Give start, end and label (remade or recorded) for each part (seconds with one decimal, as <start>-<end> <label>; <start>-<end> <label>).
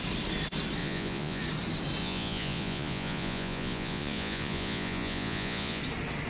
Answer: 0.0-0.8 recorded; 0.8-1.4 remade; 1.4-2.0 recorded; 2.0-5.8 remade; 5.8-6.3 recorded